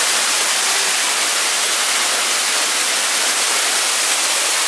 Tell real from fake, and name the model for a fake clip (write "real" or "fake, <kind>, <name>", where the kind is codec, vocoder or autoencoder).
real